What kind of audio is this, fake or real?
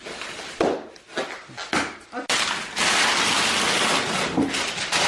real